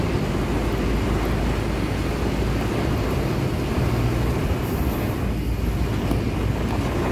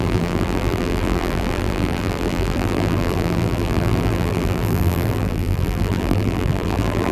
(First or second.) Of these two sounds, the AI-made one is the second